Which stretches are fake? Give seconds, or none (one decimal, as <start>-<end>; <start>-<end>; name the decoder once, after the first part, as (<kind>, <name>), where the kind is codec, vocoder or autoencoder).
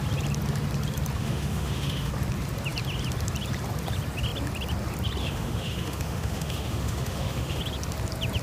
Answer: 1.2-2.1 (autoencoder, DAC-VAE); 5.2-7.6